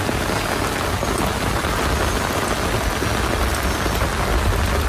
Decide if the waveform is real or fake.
real